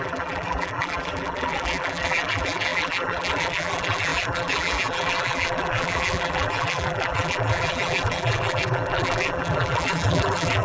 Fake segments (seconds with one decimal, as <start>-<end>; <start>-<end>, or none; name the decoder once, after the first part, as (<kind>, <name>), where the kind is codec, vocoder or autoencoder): 0.0-10.6 (vocoder, BigVGAN v2)